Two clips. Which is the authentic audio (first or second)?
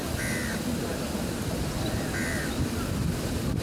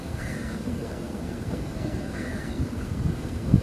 first